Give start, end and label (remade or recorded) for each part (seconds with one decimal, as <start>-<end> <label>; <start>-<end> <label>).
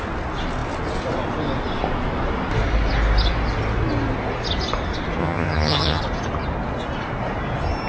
0.0-5.2 recorded; 5.2-6.0 remade; 6.0-7.9 recorded